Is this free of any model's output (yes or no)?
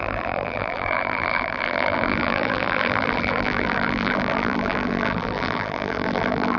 no